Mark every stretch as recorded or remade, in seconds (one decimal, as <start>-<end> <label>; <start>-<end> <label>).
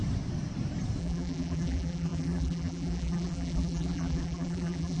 0.0-1.0 recorded; 1.0-5.0 remade